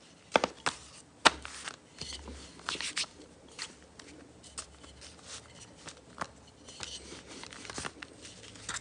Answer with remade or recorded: recorded